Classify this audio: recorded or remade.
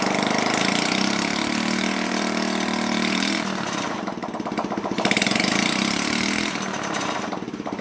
remade